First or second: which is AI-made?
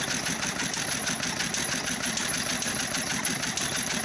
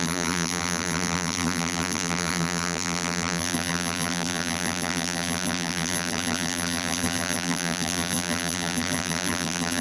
second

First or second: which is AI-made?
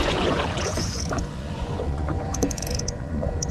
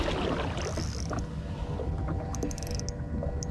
first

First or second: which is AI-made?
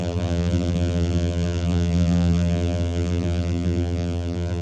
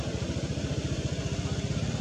first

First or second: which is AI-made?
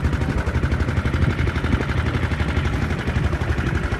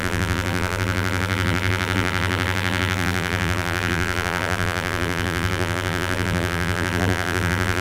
second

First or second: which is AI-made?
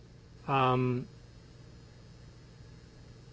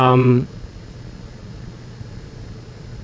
second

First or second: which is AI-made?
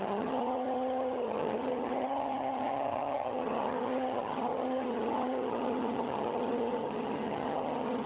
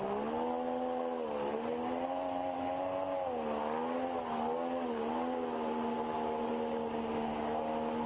first